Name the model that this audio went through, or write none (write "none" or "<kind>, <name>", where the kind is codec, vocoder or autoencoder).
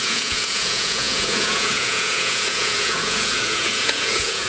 vocoder, Vocos